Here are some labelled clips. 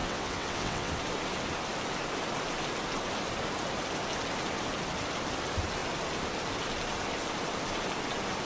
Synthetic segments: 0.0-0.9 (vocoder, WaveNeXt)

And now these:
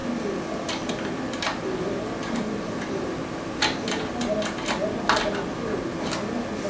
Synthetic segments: 2.2-4.0 (vocoder, BigVGAN v2)

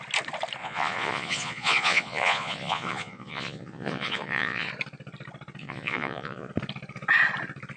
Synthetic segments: 0.6-4.7 (vocoder, Vocos); 5.6-6.5

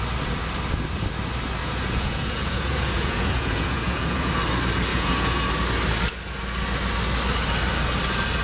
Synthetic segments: 1.6-4.3 (vocoder, Vocos); 4.9-5.5

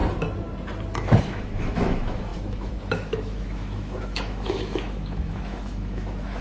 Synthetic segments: 1.2-6.4 (autoencoder, DAC-VAE)

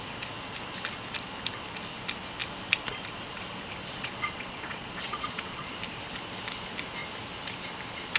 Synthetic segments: 3.8-5.7 (vocoder, Vocos)

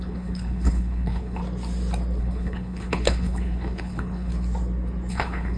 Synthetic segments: 0.0-1.4 (codec, HILCodec); 2.2-4.3; 5.1-5.6

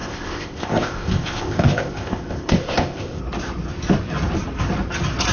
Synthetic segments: 0.0-3.2 (codec, ZipCodec)